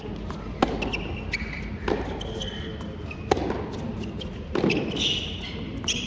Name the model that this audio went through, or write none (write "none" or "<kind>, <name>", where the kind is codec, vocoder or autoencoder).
none